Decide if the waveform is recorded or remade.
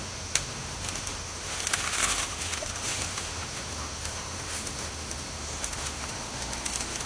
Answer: remade